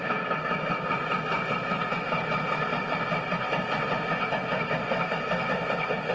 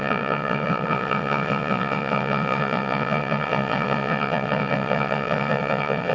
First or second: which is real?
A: first